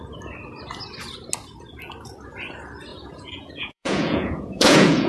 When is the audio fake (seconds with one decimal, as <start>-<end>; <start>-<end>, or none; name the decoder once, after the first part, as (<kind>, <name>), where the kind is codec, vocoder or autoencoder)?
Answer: 2.9-5.1 (vocoder, Vocos)